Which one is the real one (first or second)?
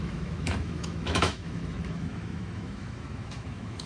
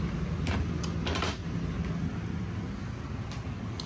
second